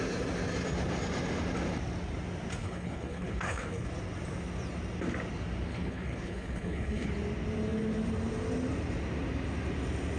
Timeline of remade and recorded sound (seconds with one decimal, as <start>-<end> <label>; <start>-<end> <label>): 0.0-2.6 recorded; 2.6-3.9 remade; 3.9-5.7 recorded; 5.7-7.1 remade; 7.1-10.2 recorded